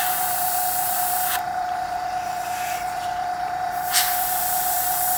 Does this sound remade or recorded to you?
remade